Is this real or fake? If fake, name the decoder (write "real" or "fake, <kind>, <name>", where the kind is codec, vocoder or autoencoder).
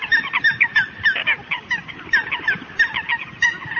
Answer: real